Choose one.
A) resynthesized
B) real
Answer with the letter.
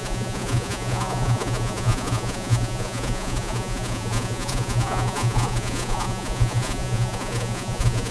A